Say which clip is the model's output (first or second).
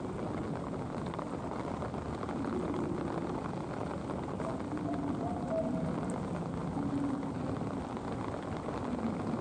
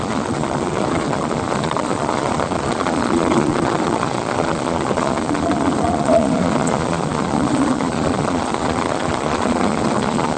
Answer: second